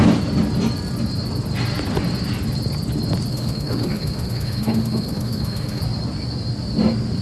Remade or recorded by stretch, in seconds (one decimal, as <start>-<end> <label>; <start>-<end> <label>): 0.0-3.3 recorded; 3.3-5.8 remade; 5.8-7.2 recorded